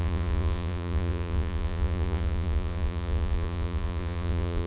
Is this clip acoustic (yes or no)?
no